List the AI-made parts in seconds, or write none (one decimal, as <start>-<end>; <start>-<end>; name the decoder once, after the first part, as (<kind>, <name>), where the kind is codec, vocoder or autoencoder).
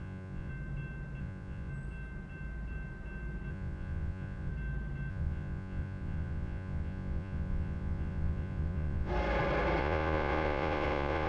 0.0-0.5 (vocoder, Vocos); 1.2-1.7; 3.5-4.5; 5.1-9.1; 9.8-11.3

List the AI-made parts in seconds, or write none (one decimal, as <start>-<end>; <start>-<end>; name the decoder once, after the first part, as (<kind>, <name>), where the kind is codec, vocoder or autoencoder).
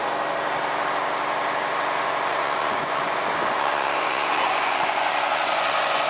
2.3-6.1 (vocoder, Vocos)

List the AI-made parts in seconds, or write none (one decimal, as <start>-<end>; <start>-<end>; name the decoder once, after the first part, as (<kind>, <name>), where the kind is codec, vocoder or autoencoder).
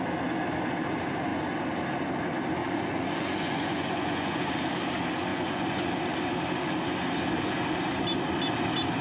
2.6-4.5 (vocoder, Vocos); 5.3-5.9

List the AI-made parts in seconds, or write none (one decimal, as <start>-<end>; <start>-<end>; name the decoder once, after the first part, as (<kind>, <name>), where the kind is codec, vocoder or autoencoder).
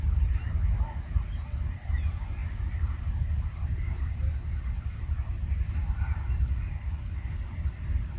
none